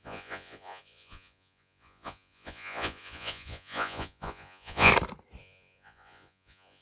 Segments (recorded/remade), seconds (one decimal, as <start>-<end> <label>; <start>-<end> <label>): 0.0-4.9 remade; 4.9-5.4 recorded; 5.4-6.8 remade